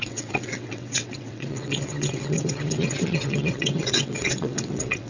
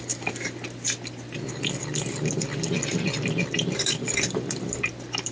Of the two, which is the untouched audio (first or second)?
second